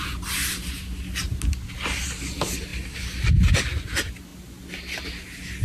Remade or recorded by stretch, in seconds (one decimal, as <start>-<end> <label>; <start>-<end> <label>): 0.0-5.6 recorded